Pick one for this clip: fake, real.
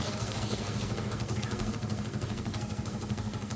fake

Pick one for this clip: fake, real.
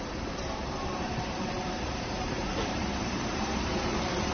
fake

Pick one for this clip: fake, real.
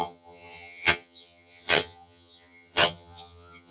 fake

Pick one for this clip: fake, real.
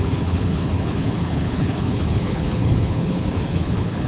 fake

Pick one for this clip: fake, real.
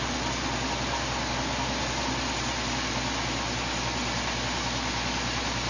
real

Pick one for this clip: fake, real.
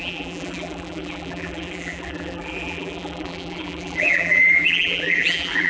fake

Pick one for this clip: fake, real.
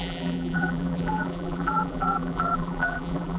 fake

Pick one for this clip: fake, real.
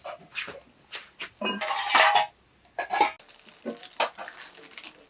real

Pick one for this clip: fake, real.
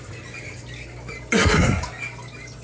real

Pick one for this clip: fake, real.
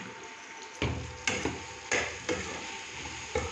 real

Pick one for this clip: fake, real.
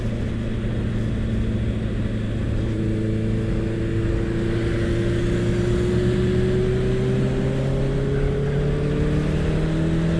real